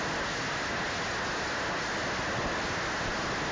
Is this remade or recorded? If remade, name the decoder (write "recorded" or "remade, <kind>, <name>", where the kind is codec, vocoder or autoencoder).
recorded